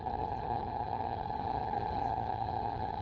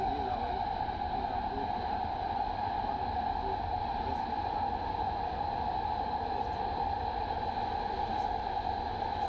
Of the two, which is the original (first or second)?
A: second